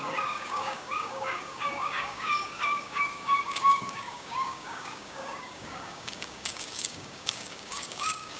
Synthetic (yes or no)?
yes